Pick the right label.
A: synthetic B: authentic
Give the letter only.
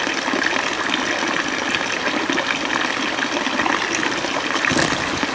B